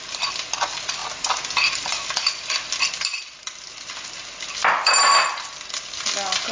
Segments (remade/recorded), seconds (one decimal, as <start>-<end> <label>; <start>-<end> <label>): 0.0-6.5 recorded